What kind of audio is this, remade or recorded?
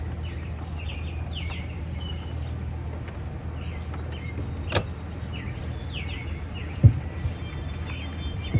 recorded